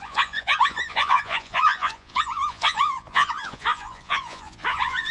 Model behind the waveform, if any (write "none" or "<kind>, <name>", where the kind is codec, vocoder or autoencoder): vocoder, Vocos